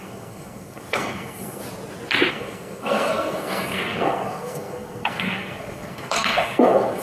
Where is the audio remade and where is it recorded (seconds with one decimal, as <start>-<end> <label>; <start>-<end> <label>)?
0.0-1.6 remade; 1.6-2.3 recorded; 2.3-7.0 remade